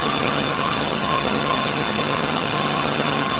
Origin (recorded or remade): remade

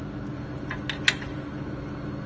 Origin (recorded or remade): recorded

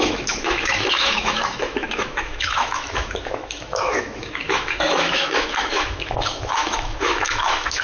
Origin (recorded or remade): remade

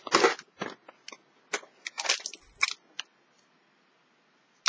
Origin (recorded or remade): recorded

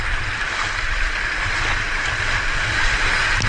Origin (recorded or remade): recorded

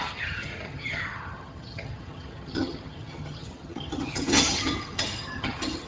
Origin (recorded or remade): remade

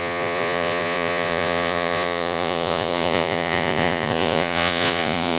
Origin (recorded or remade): remade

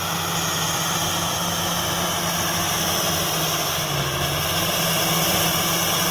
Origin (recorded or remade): recorded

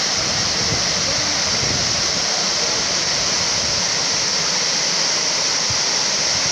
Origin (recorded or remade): recorded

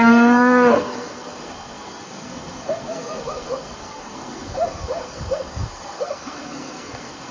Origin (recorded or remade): remade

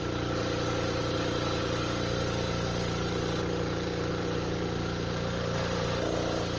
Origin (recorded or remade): recorded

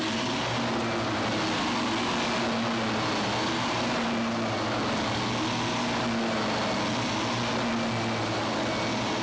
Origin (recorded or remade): recorded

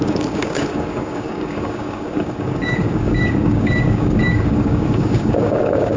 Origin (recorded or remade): remade